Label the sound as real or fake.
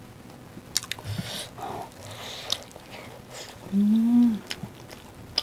real